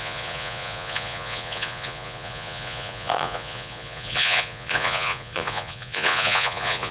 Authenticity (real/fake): fake